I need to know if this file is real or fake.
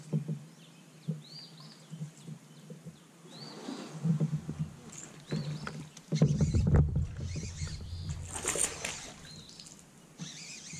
real